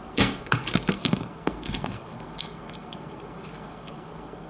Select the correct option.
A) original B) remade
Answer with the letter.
B